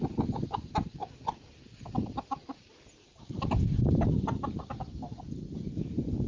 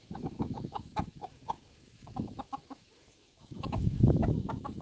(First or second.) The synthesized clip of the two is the second